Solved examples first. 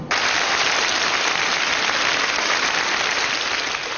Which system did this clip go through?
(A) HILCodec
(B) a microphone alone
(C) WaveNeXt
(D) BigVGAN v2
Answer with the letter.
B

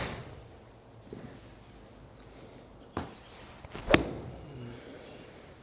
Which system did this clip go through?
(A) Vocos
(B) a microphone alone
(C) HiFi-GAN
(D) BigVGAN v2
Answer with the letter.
B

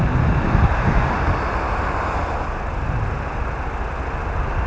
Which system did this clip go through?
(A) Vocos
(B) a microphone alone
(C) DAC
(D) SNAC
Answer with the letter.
B